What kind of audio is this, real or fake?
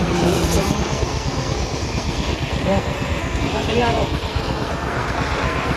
fake